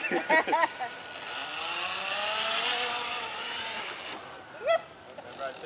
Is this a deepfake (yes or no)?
no